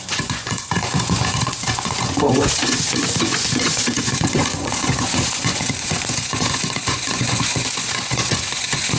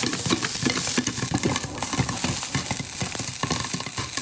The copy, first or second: first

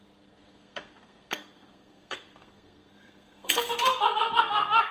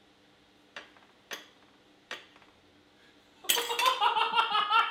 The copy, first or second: first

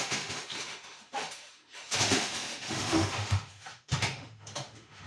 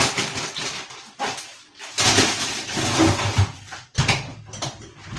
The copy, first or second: first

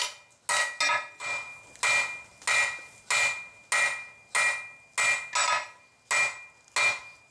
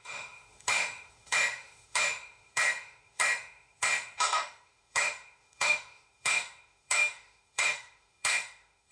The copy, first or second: second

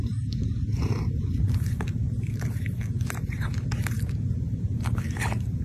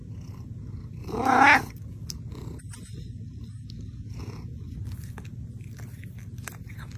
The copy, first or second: first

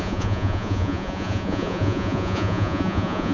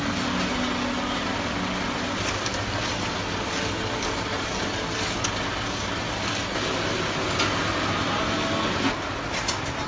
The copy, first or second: first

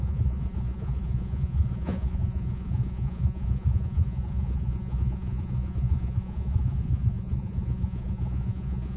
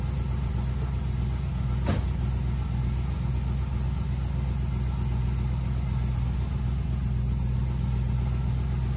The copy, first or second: first